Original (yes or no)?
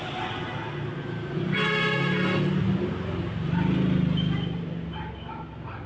yes